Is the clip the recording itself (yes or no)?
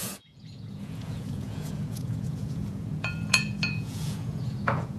no